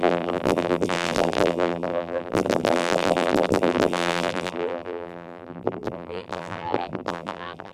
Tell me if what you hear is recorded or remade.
remade